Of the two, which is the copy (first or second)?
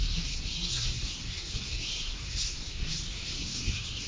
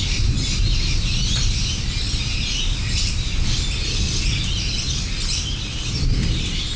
first